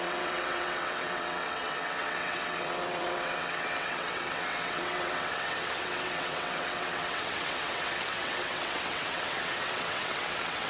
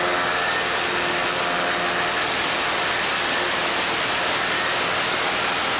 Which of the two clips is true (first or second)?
second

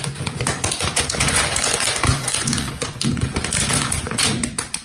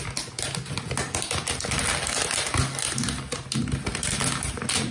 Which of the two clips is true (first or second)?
second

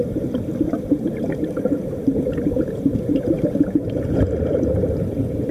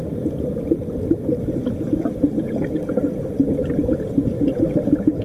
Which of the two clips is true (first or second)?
second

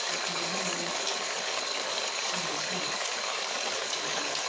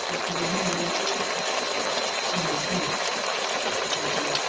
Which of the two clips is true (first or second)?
second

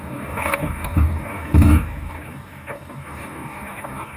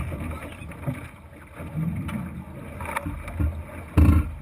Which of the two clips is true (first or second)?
second